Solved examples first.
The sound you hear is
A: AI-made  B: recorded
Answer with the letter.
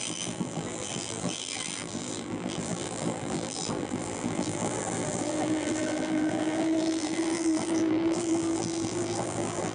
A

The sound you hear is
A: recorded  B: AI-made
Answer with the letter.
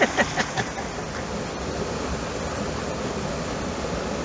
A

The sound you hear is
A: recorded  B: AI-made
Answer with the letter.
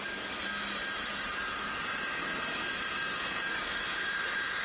A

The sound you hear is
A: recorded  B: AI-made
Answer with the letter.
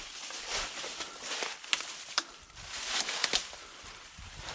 B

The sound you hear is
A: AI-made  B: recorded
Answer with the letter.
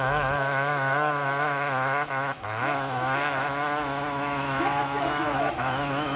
A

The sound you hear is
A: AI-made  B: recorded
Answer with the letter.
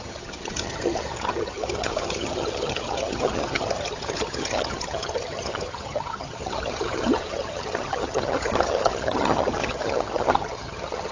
A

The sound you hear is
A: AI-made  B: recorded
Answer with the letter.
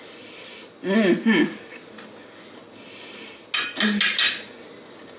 B